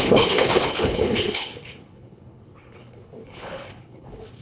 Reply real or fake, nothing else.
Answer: fake